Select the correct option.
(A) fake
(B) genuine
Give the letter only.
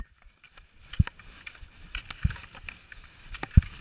B